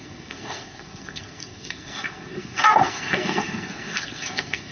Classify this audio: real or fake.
fake